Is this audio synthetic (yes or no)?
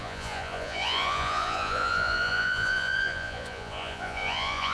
yes